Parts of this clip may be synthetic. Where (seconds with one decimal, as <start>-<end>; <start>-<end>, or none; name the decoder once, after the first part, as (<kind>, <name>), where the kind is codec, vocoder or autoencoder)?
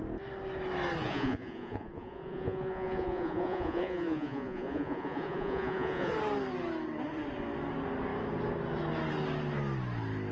1.0-6.1 (vocoder, Vocos)